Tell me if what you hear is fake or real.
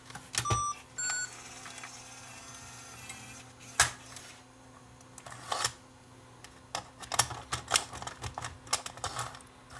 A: real